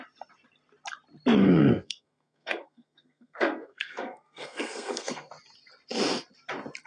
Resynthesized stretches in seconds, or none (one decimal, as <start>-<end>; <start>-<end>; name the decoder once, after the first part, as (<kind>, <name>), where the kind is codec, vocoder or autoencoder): 1.4-5.3 (codec, SNAC)